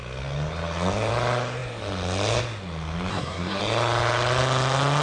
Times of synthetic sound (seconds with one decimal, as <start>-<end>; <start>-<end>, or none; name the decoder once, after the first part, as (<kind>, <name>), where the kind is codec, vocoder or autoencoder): 3.1-3.6 (codec, SNAC)